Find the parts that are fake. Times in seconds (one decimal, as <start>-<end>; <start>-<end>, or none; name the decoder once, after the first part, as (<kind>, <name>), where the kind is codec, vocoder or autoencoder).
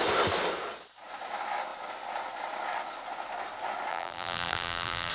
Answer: 3.9-5.1 (vocoder, BigVGAN v2)